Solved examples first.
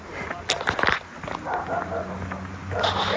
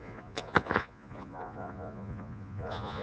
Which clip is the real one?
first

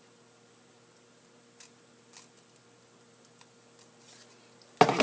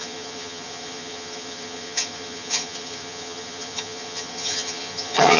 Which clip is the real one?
first